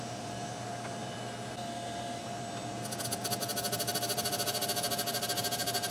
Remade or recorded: recorded